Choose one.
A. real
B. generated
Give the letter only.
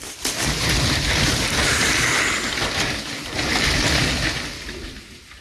A